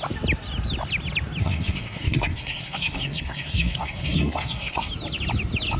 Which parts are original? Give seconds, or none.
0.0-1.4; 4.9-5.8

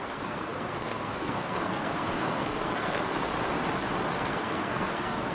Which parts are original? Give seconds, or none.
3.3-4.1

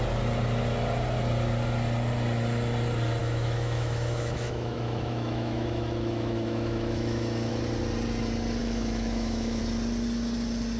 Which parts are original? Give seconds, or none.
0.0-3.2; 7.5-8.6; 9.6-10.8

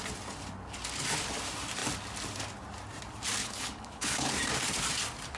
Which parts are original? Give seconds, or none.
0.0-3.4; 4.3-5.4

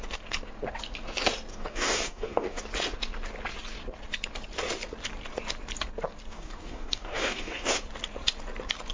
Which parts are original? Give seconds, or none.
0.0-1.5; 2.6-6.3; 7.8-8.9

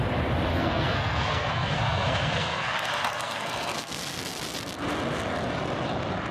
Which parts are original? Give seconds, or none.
0.0-0.5; 4.2-6.3

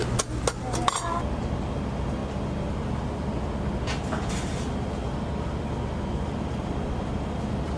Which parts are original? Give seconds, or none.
0.0-7.8